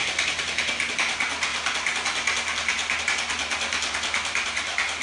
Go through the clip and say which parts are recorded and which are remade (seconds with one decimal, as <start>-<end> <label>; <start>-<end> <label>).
0.0-5.0 recorded